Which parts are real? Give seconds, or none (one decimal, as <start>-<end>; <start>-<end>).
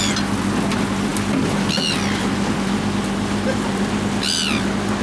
0.0-5.0